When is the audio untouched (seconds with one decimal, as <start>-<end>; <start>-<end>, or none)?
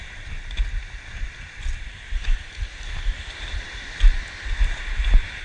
0.0-5.4